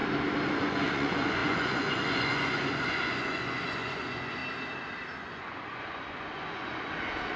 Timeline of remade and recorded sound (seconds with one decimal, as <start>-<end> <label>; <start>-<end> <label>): 0.0-0.6 recorded; 0.6-4.4 remade; 4.4-5.2 recorded; 5.2-7.4 remade